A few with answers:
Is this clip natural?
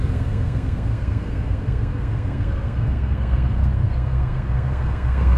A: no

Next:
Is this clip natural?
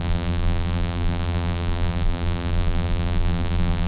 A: no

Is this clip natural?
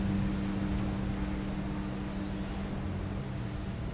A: yes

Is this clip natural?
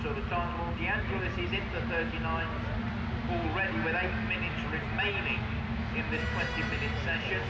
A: yes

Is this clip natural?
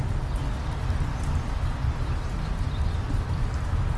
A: yes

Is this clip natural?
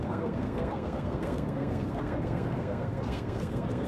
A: no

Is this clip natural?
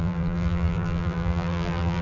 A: no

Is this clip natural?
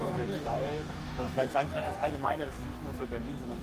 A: no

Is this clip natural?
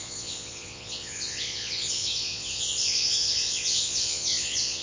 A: no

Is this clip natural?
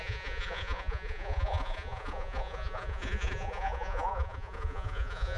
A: no